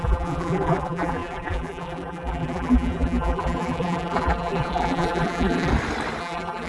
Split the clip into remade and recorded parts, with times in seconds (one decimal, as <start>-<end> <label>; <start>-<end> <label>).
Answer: 0.0-5.7 remade; 5.7-6.2 recorded; 6.2-6.7 remade